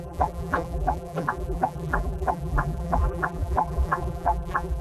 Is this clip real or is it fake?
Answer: fake